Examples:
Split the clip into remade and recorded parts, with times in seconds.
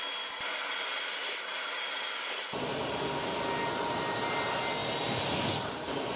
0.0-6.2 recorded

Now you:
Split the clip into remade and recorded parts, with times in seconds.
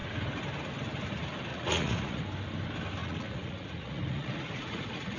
0.0-1.5 recorded; 1.5-2.2 remade; 2.2-3.0 recorded; 3.0-5.2 remade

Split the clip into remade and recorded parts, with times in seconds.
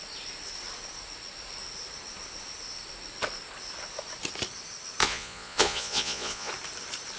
0.0-5.0 recorded; 5.0-6.5 remade; 6.5-7.2 recorded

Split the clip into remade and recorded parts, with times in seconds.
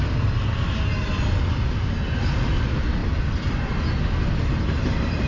0.0-5.3 recorded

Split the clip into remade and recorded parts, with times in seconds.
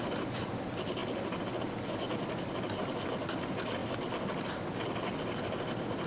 0.0-6.1 recorded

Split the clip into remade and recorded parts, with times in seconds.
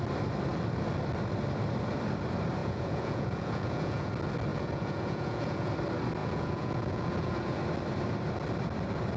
0.0-2.6 recorded; 2.6-4.1 remade; 4.1-4.5 recorded; 4.5-5.7 remade; 5.7-6.2 recorded; 6.2-7.6 remade; 7.6-9.2 recorded